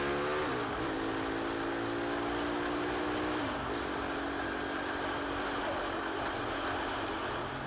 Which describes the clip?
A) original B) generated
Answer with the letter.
A